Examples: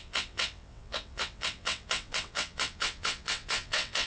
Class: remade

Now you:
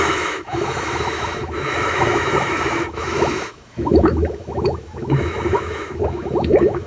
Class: remade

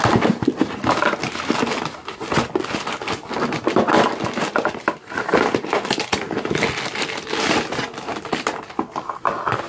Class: recorded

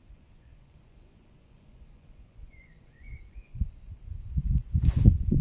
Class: remade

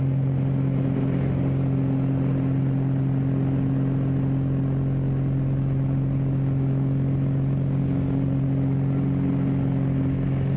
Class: recorded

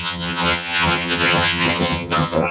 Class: remade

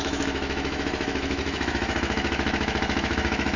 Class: remade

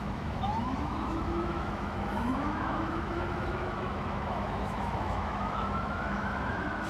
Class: remade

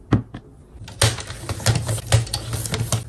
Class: recorded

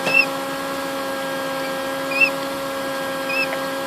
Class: recorded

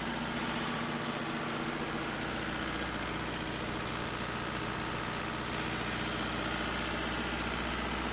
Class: recorded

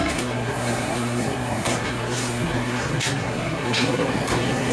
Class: remade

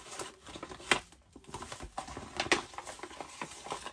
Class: recorded